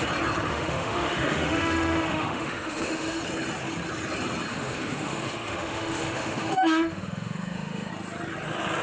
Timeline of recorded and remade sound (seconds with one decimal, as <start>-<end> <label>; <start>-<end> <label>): 0.0-0.5 recorded; 0.5-3.2 remade; 3.2-4.5 recorded; 4.5-7.9 remade; 7.9-8.8 recorded